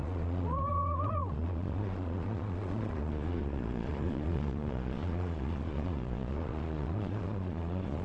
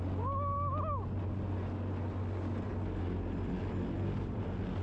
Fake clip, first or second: first